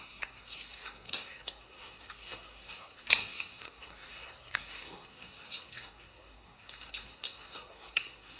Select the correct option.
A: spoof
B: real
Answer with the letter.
A